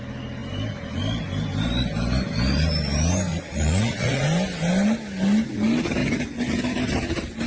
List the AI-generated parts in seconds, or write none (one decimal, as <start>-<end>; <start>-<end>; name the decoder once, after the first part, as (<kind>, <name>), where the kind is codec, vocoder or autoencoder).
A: 3.3-4.2 (vocoder, Vocos)